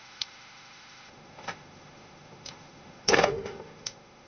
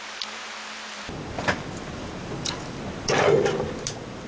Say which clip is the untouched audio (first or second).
second